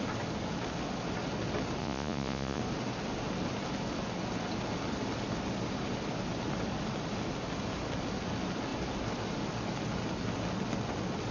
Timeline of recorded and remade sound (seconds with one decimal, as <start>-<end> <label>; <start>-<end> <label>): 0.0-1.8 recorded; 1.8-2.6 remade; 2.6-11.3 recorded